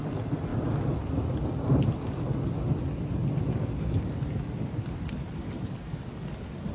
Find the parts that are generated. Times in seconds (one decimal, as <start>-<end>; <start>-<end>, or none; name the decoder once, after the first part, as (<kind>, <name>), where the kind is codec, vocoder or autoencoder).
none